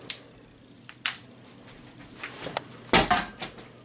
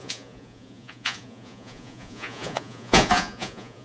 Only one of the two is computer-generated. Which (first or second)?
second